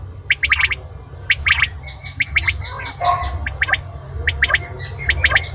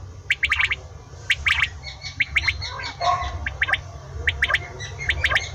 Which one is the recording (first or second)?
first